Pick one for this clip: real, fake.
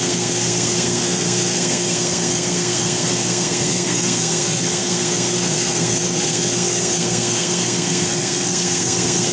fake